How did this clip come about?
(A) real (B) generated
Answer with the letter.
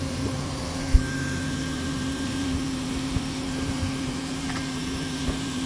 B